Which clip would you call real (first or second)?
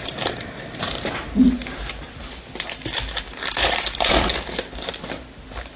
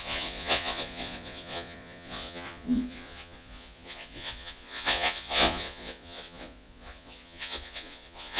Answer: first